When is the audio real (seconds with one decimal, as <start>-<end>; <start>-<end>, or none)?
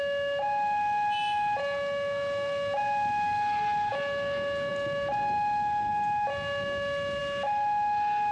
0.0-8.3